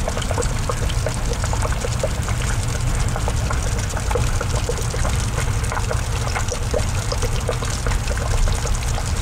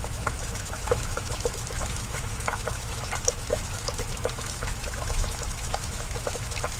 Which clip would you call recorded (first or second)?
first